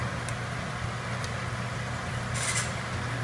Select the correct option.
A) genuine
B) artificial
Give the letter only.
A